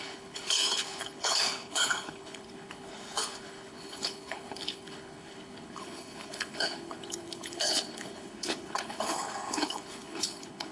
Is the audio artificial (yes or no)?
yes